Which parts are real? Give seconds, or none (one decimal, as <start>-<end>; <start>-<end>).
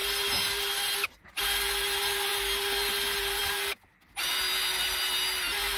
0.0-5.8